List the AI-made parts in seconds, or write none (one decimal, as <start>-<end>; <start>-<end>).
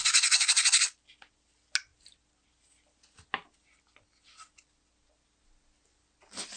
none